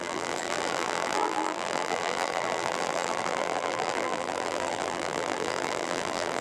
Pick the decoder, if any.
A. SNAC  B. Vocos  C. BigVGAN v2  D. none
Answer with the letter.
C